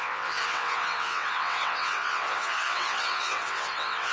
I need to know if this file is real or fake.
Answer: fake